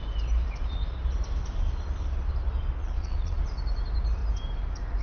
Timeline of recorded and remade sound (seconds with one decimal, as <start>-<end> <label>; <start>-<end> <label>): 0.0-2.8 recorded; 2.8-3.4 remade; 3.4-5.0 recorded